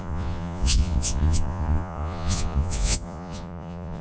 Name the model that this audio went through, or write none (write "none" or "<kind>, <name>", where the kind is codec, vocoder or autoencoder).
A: vocoder, Vocos